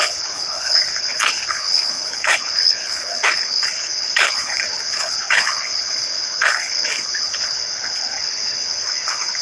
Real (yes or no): no